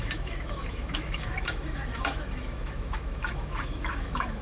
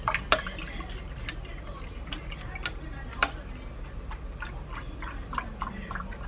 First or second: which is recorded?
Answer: second